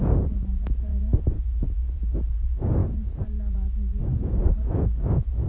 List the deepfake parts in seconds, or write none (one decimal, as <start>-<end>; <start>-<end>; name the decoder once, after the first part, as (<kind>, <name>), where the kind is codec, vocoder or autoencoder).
0.0-5.5 (vocoder, Vocos)